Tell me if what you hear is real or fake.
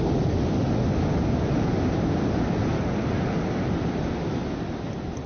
real